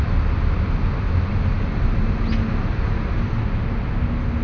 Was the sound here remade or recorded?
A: recorded